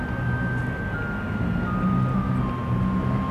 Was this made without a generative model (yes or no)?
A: yes